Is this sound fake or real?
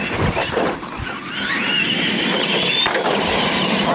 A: real